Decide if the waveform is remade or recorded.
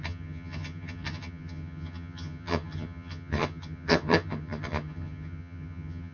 remade